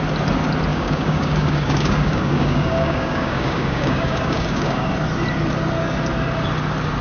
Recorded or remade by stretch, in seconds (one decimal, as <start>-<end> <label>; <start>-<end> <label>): 0.0-0.7 recorded; 0.7-4.9 remade; 4.9-7.0 recorded